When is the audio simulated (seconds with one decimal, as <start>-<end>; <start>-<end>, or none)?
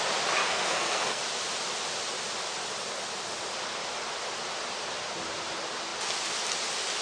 0.4-1.2